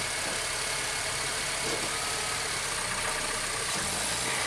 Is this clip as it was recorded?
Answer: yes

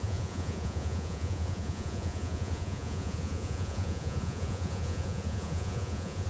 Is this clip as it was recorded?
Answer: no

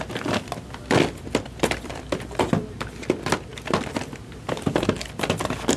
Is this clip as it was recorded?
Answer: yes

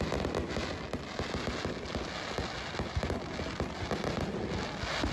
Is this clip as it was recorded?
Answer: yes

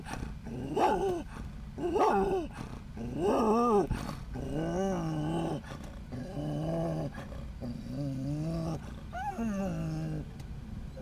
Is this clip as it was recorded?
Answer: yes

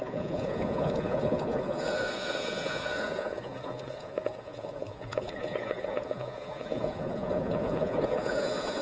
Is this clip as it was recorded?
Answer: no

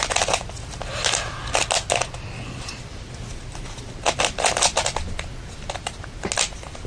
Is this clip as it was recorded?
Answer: yes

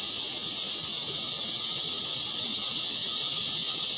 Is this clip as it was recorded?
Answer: no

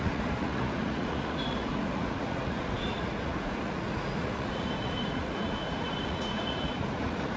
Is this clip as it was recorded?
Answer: no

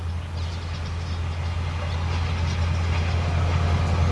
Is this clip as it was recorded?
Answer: yes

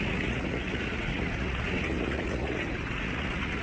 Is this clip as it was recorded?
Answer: no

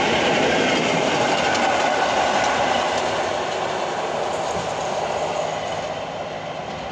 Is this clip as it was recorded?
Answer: yes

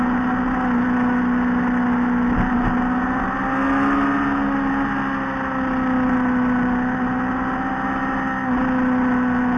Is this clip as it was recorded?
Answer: yes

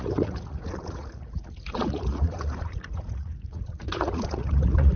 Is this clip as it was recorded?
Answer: no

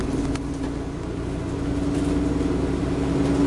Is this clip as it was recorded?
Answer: yes